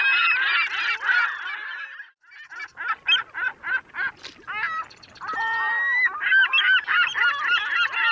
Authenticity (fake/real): real